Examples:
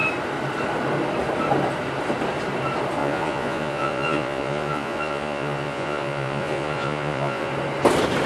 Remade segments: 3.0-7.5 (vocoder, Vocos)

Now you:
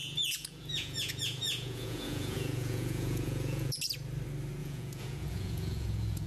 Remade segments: 0.0-3.8 (vocoder, Vocos); 4.6-6.3